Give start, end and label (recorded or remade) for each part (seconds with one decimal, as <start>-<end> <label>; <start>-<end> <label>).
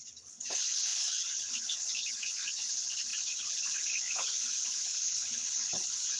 0.0-6.2 remade